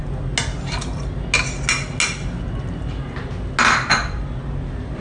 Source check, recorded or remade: recorded